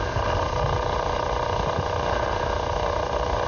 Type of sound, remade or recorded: recorded